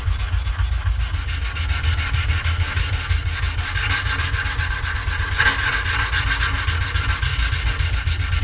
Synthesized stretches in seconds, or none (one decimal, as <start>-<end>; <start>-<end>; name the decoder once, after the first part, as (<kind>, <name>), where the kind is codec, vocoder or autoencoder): none